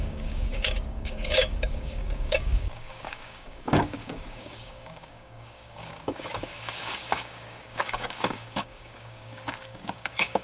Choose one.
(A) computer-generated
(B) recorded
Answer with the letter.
A